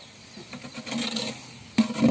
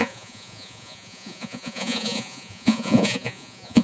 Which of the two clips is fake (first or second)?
second